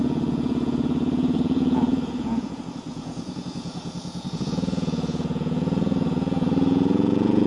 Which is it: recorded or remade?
remade